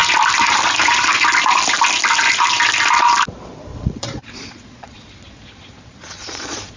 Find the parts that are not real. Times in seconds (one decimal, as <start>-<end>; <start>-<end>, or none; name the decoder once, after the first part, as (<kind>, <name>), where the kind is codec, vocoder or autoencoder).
3.7-6.8 (vocoder, Vocos)